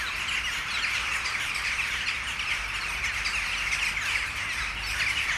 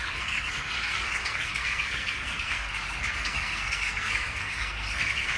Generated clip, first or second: second